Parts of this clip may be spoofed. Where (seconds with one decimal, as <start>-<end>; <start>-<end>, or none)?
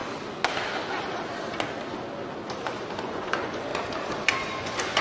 3.0-3.7; 4.4-5.0